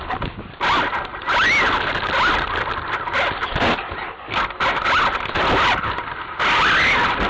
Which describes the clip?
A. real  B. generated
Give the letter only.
A